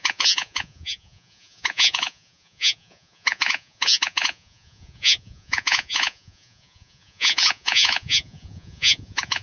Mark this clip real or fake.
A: fake